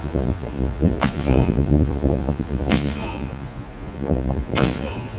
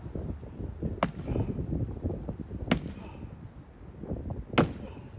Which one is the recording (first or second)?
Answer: second